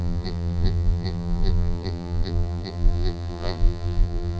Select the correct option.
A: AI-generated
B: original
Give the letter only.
A